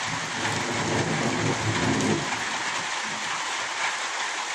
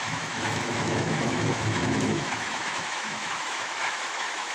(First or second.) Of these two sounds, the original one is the first